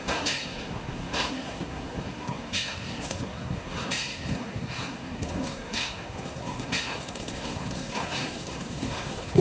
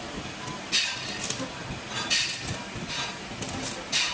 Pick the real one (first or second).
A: second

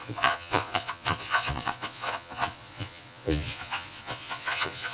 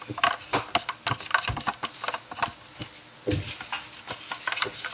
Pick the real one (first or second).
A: second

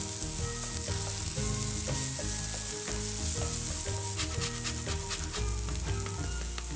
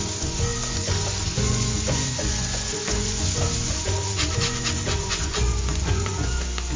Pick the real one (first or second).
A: first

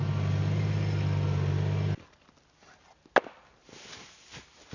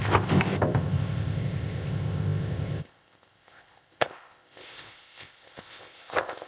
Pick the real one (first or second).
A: first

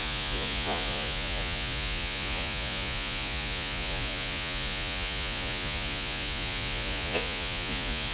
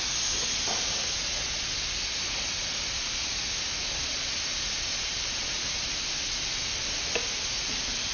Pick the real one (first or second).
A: second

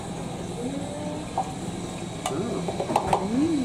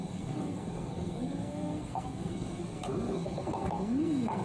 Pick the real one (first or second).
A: first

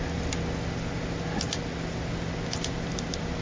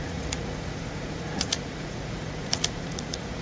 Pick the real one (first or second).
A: first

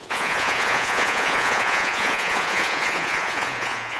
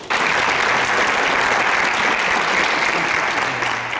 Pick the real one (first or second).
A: second